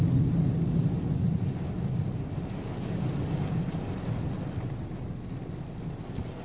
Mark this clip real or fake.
real